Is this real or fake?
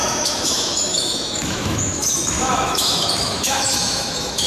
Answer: fake